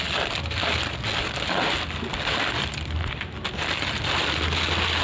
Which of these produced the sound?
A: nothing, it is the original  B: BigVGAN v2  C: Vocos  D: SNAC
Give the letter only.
A